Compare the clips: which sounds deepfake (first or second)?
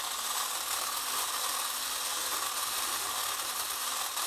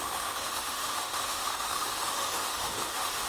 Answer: second